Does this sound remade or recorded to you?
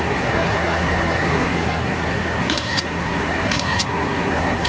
remade